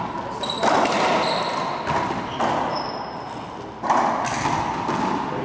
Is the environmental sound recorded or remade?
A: recorded